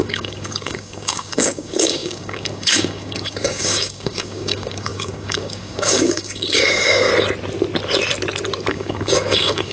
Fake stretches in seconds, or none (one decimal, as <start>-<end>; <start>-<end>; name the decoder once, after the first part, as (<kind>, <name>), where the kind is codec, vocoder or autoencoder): 0.0-7.1 (codec, DAC); 8.7-9.7